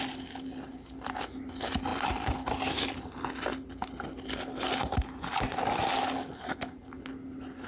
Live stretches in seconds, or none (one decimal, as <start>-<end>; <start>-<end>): 0.0-1.9; 3.0-7.7